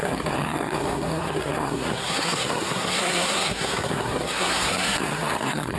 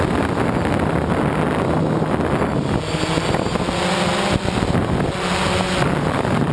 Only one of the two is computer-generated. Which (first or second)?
first